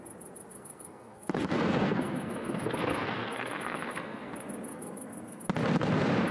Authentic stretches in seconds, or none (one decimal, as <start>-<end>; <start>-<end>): 0.0-0.5; 4.3-4.7; 5.4-6.3